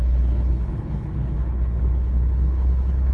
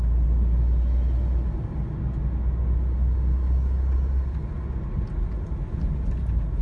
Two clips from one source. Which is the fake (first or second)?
first